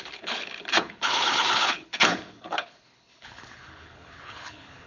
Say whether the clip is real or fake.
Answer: fake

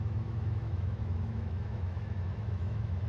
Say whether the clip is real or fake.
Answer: fake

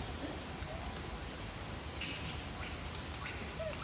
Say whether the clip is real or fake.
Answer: real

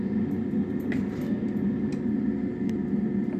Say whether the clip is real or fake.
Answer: real